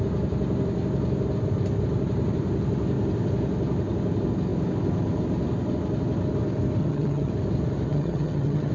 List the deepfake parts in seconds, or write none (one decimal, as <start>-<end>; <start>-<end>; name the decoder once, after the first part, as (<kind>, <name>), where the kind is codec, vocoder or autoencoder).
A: 6.8-7.3 (vocoder, HiFi-GAN); 7.9-8.7